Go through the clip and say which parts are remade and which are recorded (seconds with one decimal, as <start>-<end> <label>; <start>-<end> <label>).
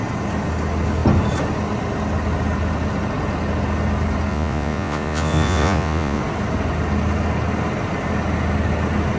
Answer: 0.0-4.3 recorded; 4.3-6.2 remade; 6.2-9.2 recorded